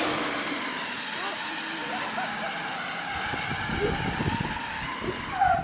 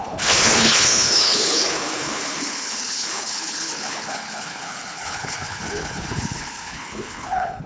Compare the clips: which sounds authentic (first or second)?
first